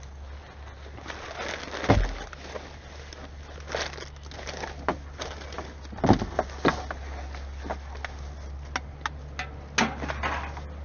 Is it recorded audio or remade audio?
recorded